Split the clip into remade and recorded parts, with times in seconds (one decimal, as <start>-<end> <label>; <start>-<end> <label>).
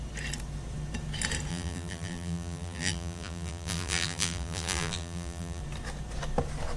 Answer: 0.0-1.5 recorded; 1.5-5.6 remade; 5.6-6.8 recorded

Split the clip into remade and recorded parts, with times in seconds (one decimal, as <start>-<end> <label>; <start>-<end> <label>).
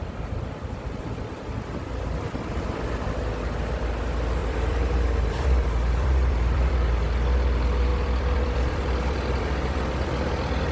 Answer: 0.0-4.4 recorded; 4.4-6.7 remade; 6.7-7.9 recorded; 7.9-9.9 remade; 9.9-10.7 recorded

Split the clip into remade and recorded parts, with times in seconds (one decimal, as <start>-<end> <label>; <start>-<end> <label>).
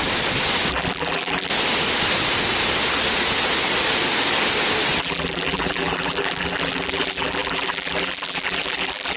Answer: 0.0-0.7 recorded; 0.7-1.5 remade; 1.5-5.0 recorded; 5.0-9.2 remade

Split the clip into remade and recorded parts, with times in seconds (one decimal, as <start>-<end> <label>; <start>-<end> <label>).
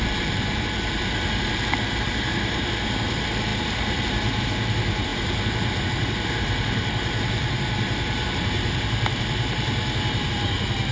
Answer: 0.0-10.9 remade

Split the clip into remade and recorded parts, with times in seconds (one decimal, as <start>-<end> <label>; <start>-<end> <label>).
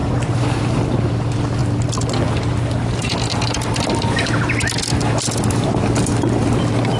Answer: 0.0-0.9 remade; 0.9-7.0 recorded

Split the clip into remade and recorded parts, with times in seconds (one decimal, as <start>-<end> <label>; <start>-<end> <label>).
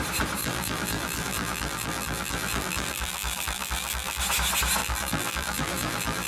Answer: 0.0-0.4 recorded; 0.4-4.2 remade; 4.2-4.8 recorded; 4.8-6.3 remade